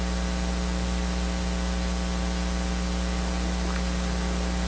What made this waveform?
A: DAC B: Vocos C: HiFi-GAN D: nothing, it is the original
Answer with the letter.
D